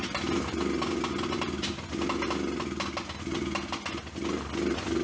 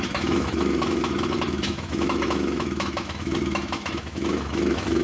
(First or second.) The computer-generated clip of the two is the second